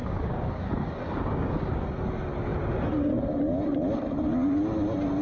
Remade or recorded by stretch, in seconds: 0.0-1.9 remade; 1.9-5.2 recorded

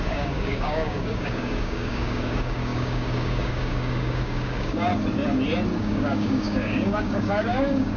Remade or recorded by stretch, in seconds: 0.0-4.9 remade; 4.9-5.8 recorded; 5.8-8.0 remade

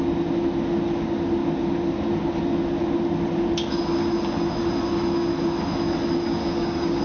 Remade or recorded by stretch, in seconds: 0.0-6.4 recorded; 6.4-7.0 remade